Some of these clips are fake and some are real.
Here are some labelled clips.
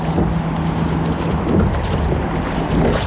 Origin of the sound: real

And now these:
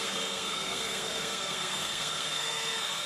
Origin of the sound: fake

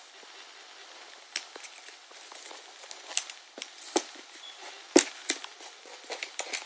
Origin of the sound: fake